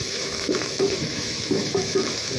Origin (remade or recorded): remade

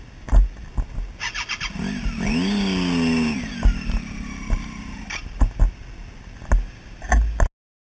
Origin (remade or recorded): recorded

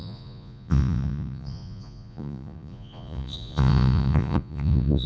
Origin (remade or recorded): remade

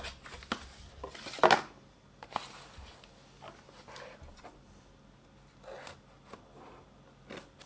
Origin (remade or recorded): recorded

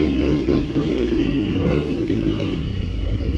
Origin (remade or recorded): remade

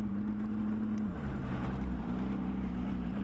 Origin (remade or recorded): recorded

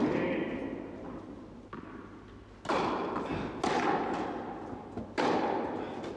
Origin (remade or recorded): recorded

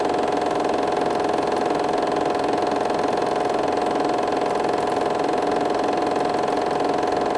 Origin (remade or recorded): recorded